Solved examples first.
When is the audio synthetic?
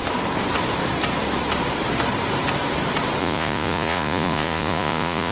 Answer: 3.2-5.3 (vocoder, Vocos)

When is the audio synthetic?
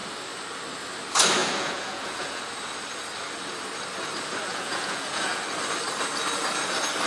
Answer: 1.4-2.4 (vocoder, Vocos); 4.5-5.4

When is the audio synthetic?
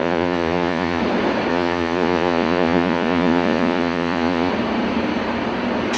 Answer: 0.0-1.0 (vocoder, Vocos); 1.5-4.5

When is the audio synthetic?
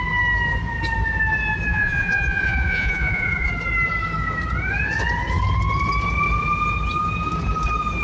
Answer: 1.7-3.5 (vocoder, Vocos)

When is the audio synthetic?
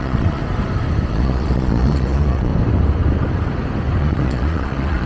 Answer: 0.0-0.4 (vocoder, Vocos); 1.1-2.5; 4.0-5.1